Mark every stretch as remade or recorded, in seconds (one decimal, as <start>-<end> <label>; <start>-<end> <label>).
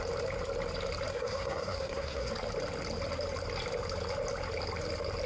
0.0-1.1 recorded; 1.1-2.3 remade; 2.3-5.3 recorded